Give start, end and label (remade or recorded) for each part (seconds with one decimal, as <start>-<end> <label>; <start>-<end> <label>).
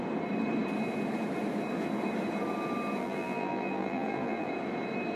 0.0-3.0 recorded; 3.0-4.5 remade; 4.5-5.2 recorded